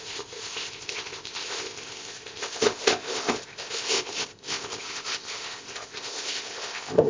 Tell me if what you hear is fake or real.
fake